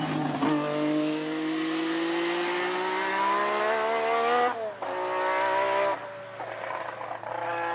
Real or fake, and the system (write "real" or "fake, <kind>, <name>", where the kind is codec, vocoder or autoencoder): real